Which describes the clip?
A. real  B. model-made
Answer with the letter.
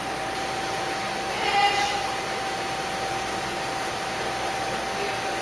A